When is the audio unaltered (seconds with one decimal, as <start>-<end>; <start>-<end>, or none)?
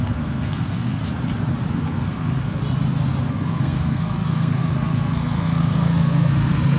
1.0-1.7; 2.6-3.3